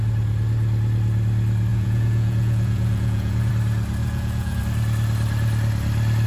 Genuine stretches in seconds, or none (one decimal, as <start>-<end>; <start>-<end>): 0.0-1.7; 3.5-4.0; 4.6-6.3